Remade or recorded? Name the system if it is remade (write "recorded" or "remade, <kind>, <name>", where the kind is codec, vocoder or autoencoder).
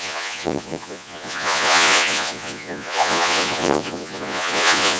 remade, vocoder, Vocos